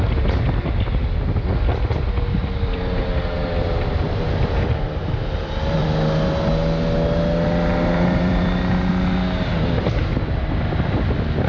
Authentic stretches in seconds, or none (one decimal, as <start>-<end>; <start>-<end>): 0.0-2.4; 5.5-7.7; 8.6-11.5